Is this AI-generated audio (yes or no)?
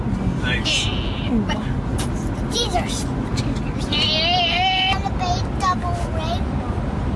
no